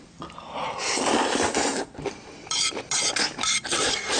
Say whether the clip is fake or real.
fake